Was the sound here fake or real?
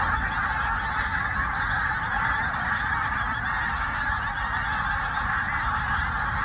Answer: real